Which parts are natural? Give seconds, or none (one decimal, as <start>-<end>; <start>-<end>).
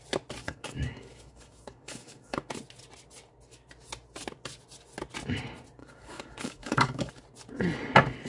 0.0-0.4; 2.5-5.8; 7.1-8.3